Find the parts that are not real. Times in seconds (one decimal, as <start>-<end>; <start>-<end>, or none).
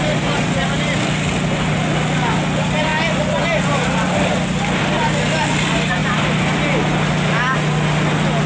none